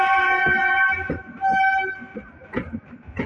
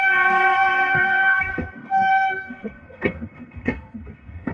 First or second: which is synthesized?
second